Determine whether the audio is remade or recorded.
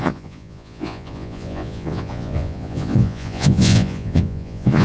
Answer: remade